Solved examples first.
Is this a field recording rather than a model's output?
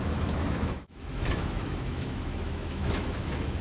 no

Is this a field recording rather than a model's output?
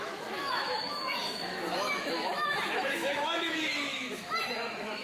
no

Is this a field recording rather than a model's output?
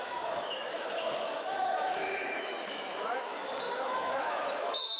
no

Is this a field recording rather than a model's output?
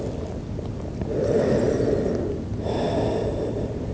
yes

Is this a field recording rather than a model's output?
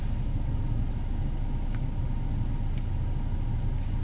yes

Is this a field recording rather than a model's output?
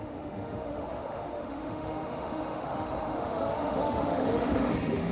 no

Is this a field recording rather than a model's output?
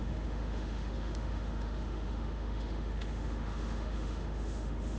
no